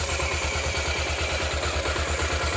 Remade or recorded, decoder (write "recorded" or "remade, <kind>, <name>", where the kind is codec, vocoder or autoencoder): recorded